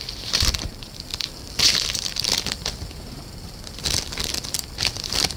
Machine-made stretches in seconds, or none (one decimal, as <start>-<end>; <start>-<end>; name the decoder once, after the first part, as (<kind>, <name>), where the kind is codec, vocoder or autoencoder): 0.0-5.4 (vocoder, BigVGAN v2)